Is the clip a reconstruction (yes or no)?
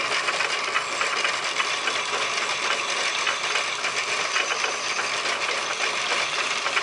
no